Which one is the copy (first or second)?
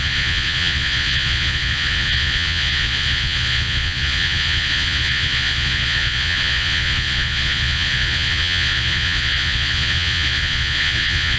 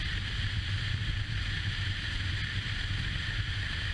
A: first